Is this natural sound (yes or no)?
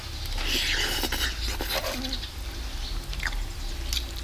yes